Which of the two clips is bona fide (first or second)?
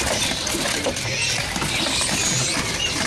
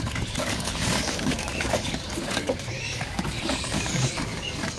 first